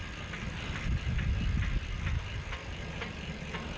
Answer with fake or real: fake